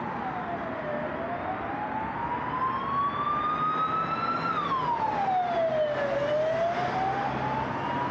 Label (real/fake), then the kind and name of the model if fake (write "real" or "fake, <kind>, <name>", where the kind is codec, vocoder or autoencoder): real